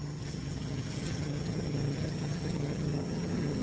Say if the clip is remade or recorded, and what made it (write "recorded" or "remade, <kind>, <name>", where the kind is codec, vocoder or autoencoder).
remade, vocoder, HiFi-GAN